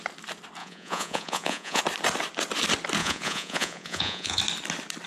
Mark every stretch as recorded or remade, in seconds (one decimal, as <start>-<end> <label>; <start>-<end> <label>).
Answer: 0.0-0.6 recorded; 0.6-1.8 remade; 1.8-3.0 recorded; 3.0-4.4 remade; 4.4-5.1 recorded